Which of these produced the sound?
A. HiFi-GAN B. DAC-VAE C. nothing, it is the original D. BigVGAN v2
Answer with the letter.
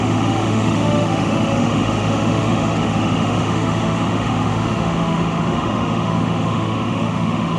B